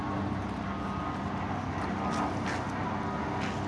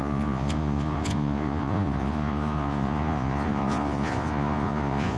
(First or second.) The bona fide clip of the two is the first